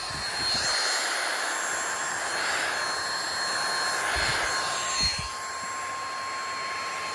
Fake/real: real